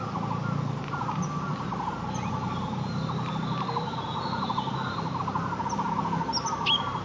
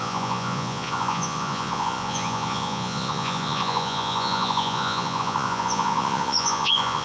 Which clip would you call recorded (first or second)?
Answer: first